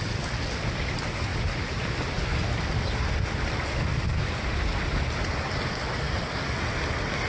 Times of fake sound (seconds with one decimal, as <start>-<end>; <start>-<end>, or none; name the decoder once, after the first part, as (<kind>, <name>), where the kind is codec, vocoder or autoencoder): none

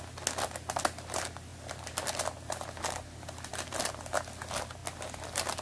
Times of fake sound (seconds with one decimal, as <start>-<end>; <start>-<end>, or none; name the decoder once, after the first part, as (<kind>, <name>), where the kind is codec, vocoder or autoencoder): none

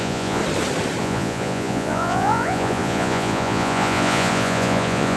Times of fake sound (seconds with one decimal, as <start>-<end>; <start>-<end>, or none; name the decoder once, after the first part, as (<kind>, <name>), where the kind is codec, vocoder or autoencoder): 0.0-0.4 (vocoder, Vocos); 1.0-5.2

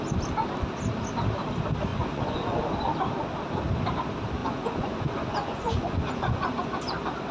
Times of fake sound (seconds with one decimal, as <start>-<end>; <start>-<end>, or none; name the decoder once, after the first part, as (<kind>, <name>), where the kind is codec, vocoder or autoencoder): 1.9-2.6 (vocoder, Vocos); 4.4-6.8

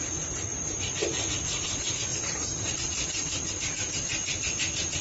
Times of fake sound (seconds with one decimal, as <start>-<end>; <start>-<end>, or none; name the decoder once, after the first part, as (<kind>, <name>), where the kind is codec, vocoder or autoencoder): none

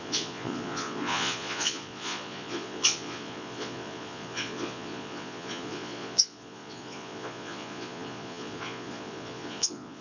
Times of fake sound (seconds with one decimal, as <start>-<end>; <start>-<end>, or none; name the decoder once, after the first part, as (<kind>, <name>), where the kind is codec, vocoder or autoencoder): 0.0-10.0 (vocoder, Vocos)

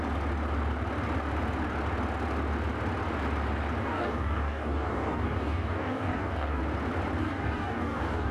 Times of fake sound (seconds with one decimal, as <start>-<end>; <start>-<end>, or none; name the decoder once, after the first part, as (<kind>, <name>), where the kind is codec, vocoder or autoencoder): 3.8-6.6 (codec, DAC); 7.2-8.3